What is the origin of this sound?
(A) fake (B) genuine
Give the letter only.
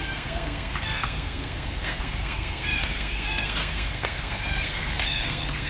A